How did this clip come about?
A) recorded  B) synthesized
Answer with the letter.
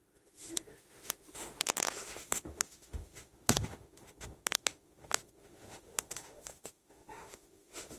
B